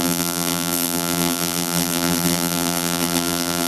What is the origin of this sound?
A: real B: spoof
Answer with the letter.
B